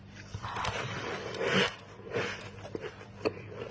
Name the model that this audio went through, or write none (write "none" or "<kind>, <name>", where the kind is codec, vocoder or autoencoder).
none